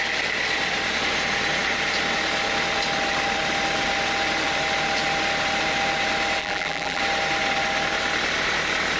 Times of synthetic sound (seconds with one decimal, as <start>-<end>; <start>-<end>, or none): 6.4-7.0